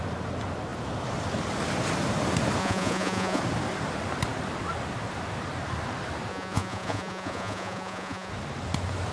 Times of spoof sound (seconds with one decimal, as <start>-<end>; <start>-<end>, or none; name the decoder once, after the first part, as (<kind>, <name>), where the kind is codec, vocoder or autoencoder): 2.6-3.4 (vocoder, Vocos); 6.3-8.3